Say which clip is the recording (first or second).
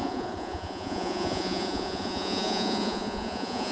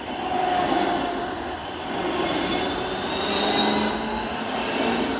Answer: second